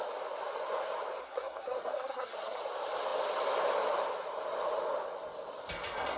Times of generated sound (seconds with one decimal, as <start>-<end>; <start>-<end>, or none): 1.2-2.6